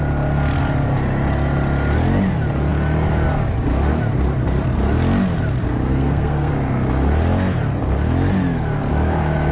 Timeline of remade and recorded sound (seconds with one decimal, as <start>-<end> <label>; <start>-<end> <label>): 0.0-5.9 recorded; 5.9-6.5 remade; 6.5-9.5 recorded